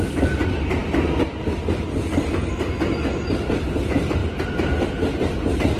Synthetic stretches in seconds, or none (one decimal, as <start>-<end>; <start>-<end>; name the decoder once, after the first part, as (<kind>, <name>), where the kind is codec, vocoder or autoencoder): none